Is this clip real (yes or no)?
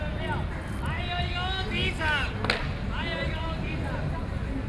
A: yes